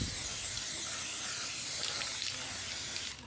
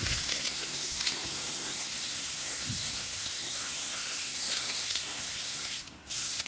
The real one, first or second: first